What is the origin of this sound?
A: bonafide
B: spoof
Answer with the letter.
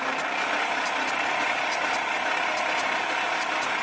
A